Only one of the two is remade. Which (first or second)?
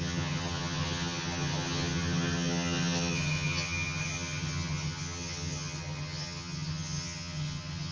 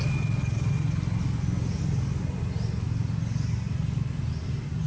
first